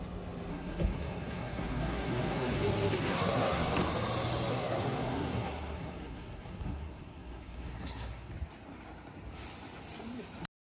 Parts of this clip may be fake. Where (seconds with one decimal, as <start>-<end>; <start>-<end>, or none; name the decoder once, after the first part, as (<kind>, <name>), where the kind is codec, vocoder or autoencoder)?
0.5-3.7 (codec, SNAC); 4.5-8.3